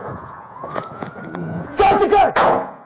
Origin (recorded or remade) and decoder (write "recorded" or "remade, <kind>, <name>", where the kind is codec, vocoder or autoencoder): remade, vocoder, Vocos